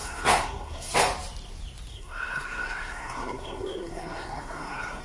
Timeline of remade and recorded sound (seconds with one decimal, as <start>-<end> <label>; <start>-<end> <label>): 0.0-0.9 remade; 0.9-1.9 recorded; 1.9-5.0 remade

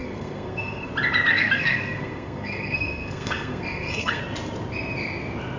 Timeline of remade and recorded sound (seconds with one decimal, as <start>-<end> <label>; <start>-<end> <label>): 0.0-0.9 remade; 0.9-1.3 recorded; 1.3-4.2 remade; 4.2-5.6 recorded

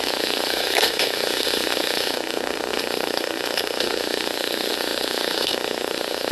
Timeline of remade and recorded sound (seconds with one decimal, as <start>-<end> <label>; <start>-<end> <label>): 0.0-6.3 remade